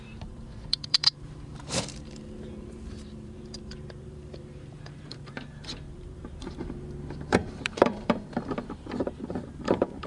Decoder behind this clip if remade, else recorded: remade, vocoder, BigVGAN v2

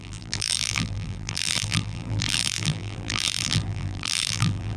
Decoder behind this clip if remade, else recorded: remade, vocoder, BigVGAN v2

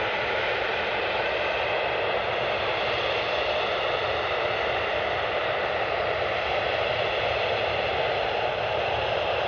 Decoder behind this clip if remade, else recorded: remade, vocoder, BigVGAN v2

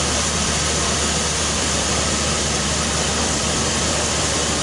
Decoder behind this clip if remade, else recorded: remade, vocoder, BigVGAN v2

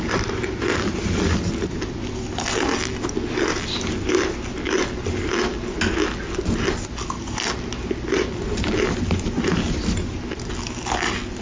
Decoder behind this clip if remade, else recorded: recorded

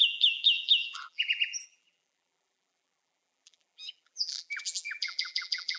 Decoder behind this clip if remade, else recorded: remade, vocoder, BigVGAN v2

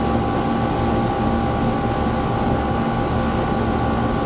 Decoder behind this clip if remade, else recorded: recorded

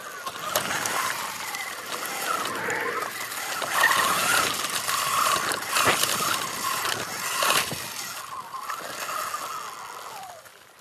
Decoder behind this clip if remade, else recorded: recorded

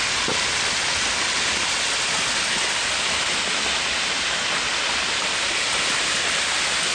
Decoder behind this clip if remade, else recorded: recorded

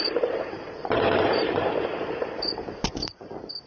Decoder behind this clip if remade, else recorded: remade, vocoder, BigVGAN v2